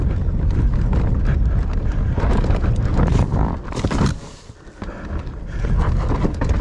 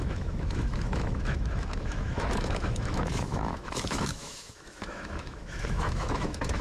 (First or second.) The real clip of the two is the first